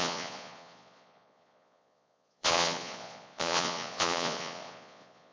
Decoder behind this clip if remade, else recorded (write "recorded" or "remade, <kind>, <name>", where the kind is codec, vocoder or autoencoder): remade, vocoder, Vocos